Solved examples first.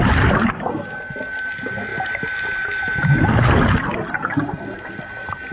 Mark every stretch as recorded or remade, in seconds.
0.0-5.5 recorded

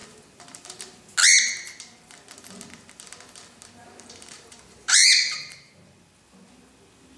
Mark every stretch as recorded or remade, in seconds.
0.0-3.8 recorded; 3.8-5.7 remade; 5.7-7.2 recorded

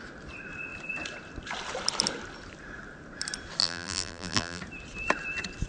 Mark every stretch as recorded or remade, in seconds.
0.0-3.6 recorded; 3.6-4.6 remade; 4.6-5.7 recorded

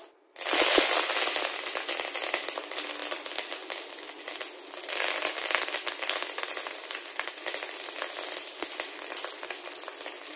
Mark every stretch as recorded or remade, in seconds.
0.0-3.0 recorded; 3.0-4.9 remade; 4.9-10.4 recorded

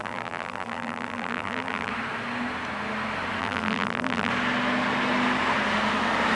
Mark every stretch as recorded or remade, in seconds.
0.0-1.9 remade; 1.9-3.4 recorded; 3.4-4.3 remade; 4.3-6.3 recorded